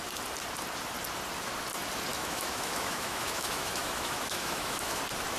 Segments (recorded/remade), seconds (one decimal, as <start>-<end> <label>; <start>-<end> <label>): 0.0-2.1 recorded; 2.1-5.0 remade; 5.0-5.4 recorded